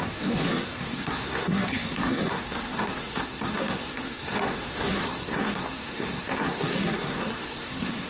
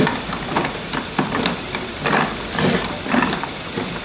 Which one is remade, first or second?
first